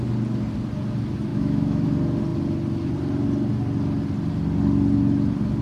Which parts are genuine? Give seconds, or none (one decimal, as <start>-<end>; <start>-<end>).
0.0-1.3; 1.9-5.6